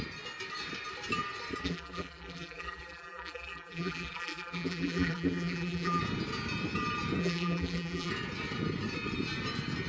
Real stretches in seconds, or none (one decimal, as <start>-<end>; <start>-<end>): 0.0-1.6; 6.0-7.2; 8.1-9.9